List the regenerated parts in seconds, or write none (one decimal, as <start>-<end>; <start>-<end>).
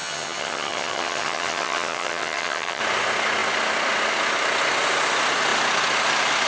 0.0-2.8